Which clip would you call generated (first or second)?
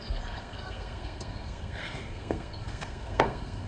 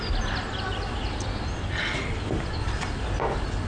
first